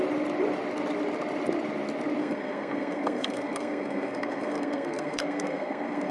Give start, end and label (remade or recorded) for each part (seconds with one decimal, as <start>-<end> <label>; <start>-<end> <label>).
0.0-2.2 recorded; 2.2-6.1 remade